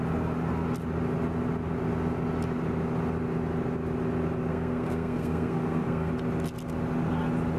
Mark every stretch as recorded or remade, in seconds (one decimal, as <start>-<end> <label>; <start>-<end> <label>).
0.0-4.5 recorded; 4.5-6.1 remade; 6.1-7.6 recorded